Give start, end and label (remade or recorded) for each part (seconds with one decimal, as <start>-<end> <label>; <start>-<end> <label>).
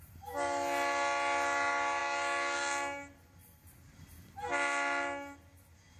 0.0-6.0 recorded